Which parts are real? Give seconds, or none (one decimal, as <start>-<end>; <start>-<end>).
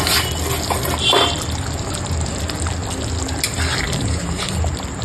0.0-5.0